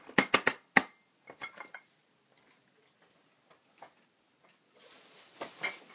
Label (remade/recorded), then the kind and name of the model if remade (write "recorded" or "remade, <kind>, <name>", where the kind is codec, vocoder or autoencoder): recorded